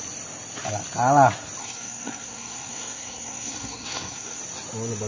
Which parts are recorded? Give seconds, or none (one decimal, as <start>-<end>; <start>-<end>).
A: 0.0-1.6; 4.4-5.1